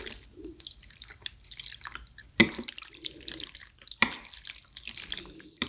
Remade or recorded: recorded